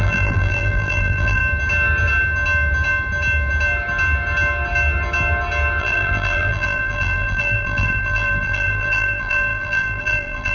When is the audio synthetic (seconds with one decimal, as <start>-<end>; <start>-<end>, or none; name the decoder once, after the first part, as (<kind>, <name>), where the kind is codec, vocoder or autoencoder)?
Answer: 0.0-1.4 (vocoder, BigVGAN v2); 5.8-10.5